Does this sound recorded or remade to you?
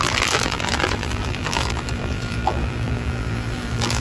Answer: remade